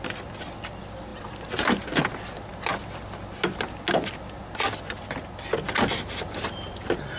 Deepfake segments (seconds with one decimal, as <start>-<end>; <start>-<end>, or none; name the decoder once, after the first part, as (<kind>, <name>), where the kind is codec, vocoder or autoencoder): none